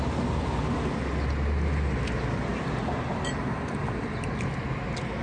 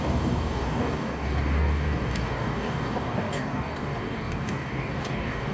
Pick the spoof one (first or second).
second